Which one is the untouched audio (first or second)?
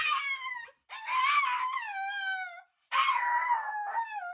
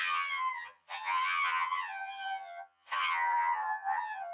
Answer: first